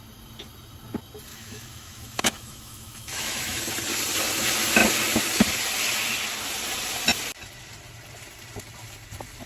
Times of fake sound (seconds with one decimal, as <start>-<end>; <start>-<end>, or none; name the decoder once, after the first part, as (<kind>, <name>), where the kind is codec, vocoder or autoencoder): 1.3-3.6 (autoencoder, DAC-VAE)